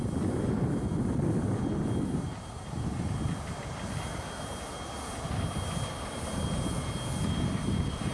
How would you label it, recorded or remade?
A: recorded